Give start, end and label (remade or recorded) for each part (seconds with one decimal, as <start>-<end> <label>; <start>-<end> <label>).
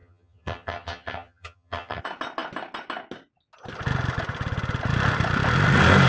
0.0-2.0 remade; 2.0-6.1 recorded